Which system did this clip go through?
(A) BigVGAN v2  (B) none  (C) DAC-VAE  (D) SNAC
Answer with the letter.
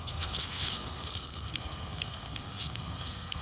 D